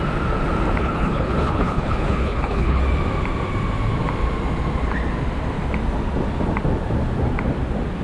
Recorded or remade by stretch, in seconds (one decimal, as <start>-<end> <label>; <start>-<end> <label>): 0.0-0.8 recorded; 0.8-2.8 remade; 2.8-8.0 recorded